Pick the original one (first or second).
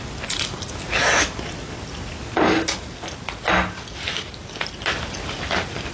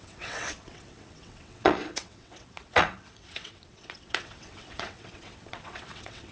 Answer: first